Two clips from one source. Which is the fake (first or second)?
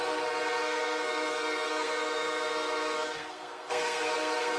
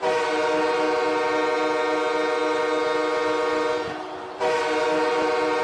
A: first